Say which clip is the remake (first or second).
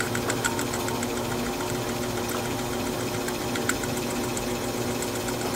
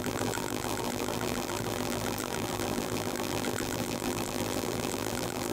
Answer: second